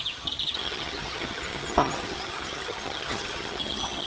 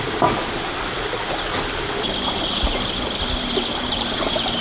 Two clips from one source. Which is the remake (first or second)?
first